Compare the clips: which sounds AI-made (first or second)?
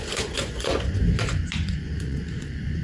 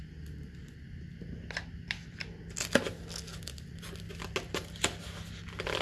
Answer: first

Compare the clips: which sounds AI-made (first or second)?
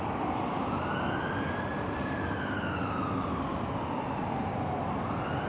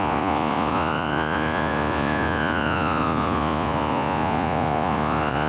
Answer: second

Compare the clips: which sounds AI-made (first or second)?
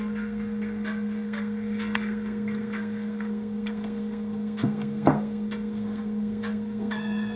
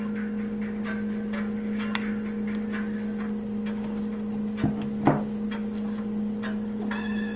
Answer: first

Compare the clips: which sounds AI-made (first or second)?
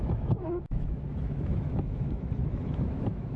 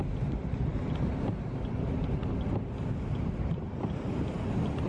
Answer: first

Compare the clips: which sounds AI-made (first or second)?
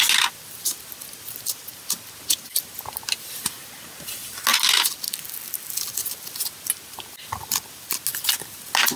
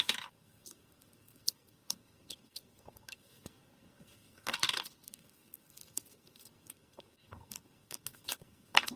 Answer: second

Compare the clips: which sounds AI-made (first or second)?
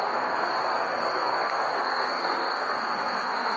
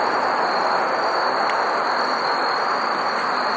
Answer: first